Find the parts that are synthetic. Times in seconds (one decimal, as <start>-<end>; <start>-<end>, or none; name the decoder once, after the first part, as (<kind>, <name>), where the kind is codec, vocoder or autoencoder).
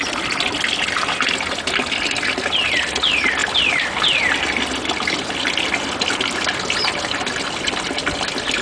none